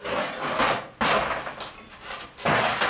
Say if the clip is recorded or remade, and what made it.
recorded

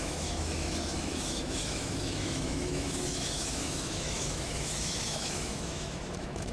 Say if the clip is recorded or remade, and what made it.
remade, autoencoder, DAC-VAE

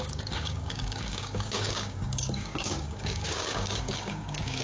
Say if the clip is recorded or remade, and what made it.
remade, codec, DAC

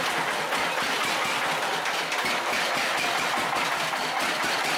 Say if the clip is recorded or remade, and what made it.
recorded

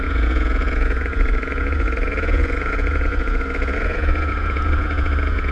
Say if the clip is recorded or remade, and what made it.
remade, vocoder, Vocos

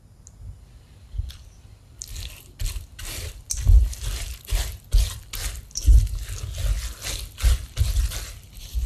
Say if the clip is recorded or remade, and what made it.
recorded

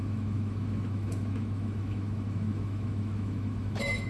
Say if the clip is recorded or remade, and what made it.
remade, autoencoder, DAC-VAE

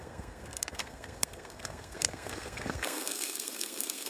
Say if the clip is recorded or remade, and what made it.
remade, codec, SNAC